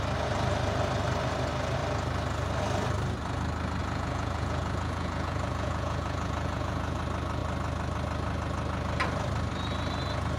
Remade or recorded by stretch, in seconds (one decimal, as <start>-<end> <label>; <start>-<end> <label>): 0.0-3.8 recorded; 3.8-7.0 remade; 7.0-10.4 recorded